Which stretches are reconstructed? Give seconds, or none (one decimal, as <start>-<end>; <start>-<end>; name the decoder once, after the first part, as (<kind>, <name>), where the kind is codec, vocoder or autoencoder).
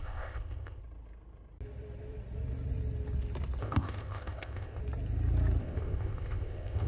0.0-0.8 (codec, ZipCodec); 3.6-4.8; 5.6-6.9